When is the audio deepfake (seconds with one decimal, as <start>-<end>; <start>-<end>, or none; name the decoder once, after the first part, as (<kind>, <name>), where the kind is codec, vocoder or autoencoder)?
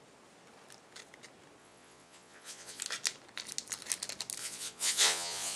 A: 1.6-2.8 (vocoder, Vocos); 4.4-5.6